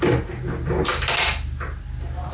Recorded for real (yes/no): yes